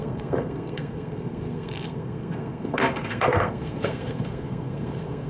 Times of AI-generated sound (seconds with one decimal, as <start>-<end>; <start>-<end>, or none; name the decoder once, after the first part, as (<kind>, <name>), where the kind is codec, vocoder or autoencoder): 0.0-5.3 (codec, SNAC)